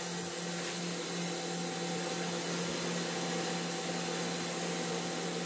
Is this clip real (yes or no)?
yes